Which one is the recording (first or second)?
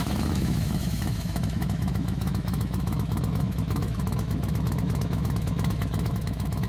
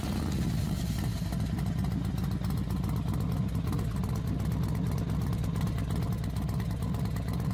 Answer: second